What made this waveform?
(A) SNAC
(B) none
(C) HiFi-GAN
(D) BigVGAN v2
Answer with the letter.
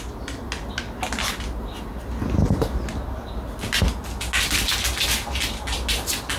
B